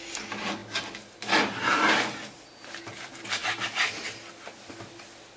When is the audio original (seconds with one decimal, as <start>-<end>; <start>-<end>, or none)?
0.0-5.4